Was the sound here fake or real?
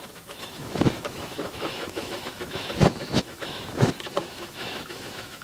fake